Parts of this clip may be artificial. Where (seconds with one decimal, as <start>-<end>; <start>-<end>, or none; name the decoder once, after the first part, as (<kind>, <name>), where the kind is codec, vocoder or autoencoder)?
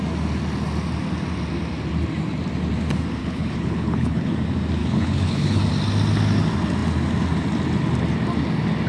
3.2-4.3 (codec, HILCodec); 4.8-5.6